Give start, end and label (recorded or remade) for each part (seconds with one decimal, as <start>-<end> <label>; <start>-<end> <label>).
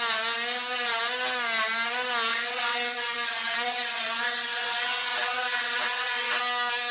0.0-2.3 recorded; 2.3-6.4 remade; 6.4-6.9 recorded